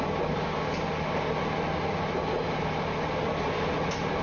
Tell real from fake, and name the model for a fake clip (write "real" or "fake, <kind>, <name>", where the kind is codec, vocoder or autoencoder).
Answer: real